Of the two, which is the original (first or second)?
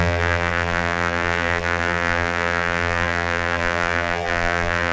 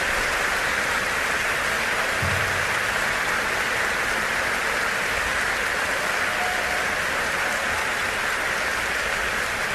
second